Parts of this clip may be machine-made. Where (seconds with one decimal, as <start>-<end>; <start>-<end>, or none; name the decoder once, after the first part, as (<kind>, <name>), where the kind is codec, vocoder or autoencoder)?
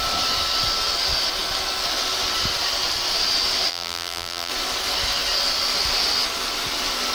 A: 3.7-4.5 (vocoder, BigVGAN v2)